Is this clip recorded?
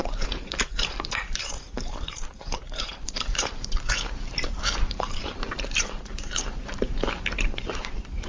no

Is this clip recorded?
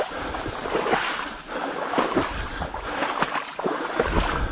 yes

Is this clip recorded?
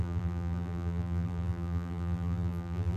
no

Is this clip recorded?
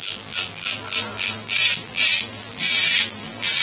no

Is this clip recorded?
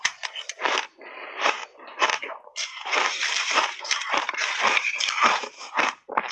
no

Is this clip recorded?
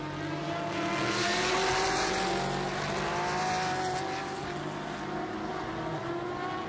yes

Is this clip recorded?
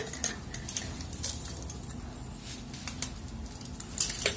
yes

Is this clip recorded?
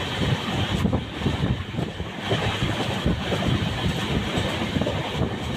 no